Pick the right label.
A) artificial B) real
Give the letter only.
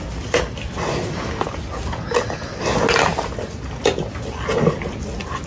B